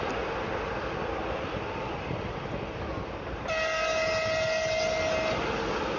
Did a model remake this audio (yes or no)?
no